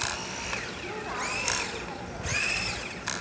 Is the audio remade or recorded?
recorded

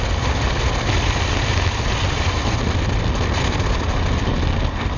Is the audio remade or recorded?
recorded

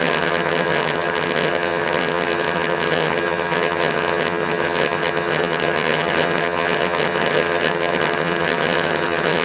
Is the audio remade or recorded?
remade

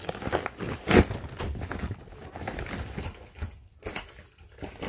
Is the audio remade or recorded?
recorded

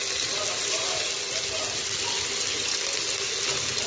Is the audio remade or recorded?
recorded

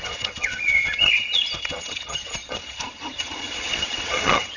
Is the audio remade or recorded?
remade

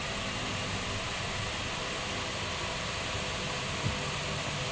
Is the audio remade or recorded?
recorded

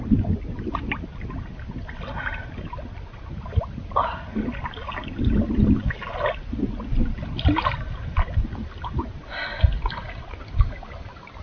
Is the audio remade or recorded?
recorded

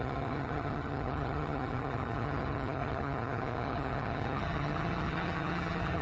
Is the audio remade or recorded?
remade